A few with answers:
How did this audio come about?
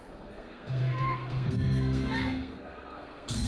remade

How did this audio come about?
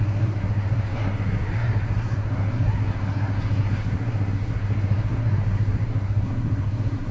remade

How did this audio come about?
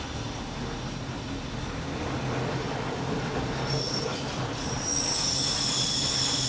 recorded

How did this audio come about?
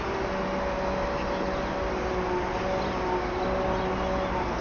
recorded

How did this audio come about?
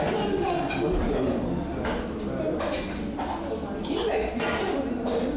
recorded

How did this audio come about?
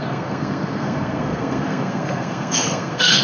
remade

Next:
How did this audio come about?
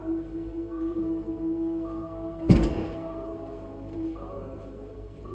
remade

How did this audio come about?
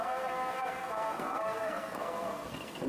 remade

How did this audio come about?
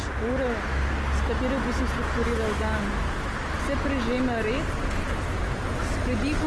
recorded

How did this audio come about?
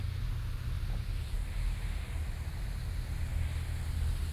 recorded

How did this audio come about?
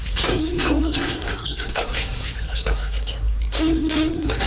remade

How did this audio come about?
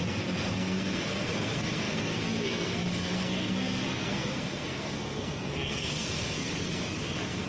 remade